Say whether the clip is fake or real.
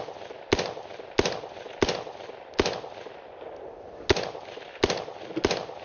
real